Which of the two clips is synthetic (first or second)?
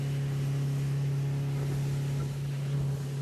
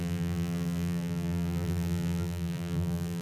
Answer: second